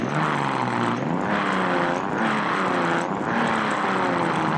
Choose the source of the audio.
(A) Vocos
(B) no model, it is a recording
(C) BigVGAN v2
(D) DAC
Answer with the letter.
B